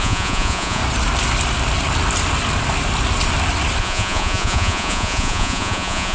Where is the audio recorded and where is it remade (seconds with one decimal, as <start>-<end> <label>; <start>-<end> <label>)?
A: 0.0-0.8 remade; 0.8-3.8 recorded; 3.8-6.1 remade